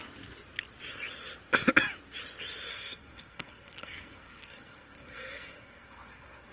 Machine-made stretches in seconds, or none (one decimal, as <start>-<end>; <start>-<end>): 2.7-6.5